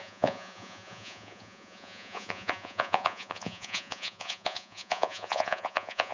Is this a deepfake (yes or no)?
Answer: yes